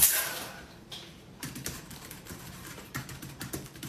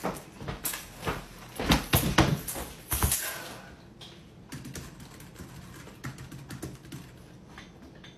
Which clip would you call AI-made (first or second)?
first